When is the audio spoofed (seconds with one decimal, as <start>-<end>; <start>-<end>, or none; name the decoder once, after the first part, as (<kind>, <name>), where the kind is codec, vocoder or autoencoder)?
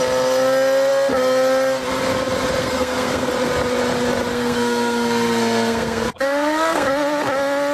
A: 2.6-3.3 (codec, SNAC); 4.3-6.9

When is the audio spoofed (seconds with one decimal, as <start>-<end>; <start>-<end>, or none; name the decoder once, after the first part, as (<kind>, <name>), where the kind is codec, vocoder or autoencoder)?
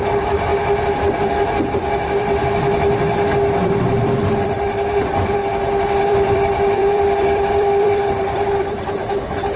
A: 0.0-0.5 (vocoder, BigVGAN v2); 4.3-9.6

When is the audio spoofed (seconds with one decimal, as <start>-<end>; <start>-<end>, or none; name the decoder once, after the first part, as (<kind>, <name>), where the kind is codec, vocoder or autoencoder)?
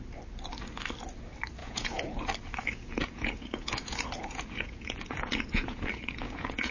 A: 1.6-2.2 (vocoder, Vocos); 2.6-6.7